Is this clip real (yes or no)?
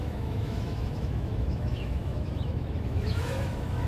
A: no